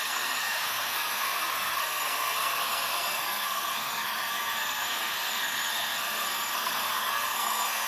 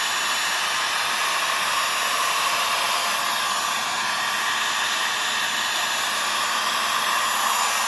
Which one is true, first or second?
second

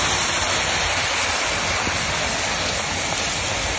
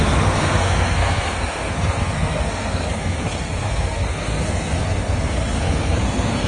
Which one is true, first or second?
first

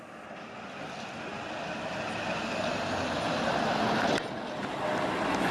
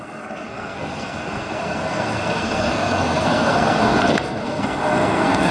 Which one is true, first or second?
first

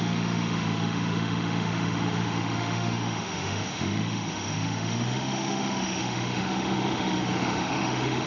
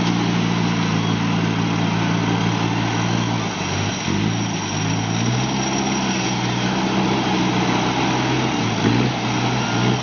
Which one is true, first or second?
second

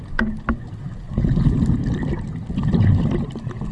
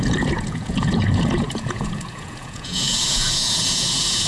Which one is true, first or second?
first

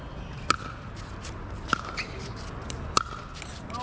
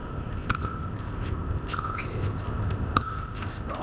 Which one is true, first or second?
first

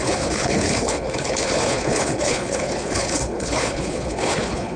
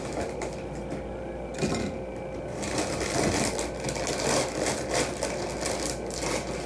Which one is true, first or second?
second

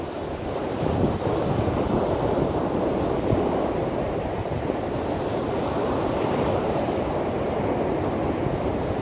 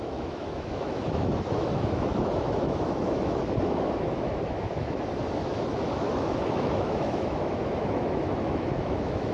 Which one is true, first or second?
first